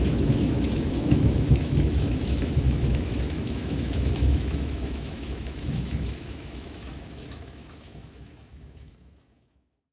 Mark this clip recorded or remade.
remade